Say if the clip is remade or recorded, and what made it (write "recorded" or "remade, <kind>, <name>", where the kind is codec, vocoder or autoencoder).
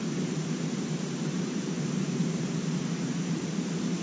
remade, vocoder, BigVGAN v2